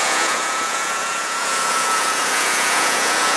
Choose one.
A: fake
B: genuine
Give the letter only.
A